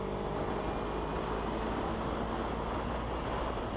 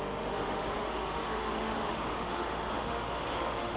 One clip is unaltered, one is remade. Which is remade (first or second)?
second